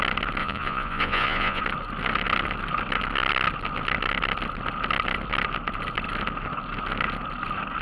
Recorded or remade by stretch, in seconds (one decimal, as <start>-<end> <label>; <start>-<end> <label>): 0.0-0.4 recorded; 0.4-1.6 remade; 1.6-7.8 recorded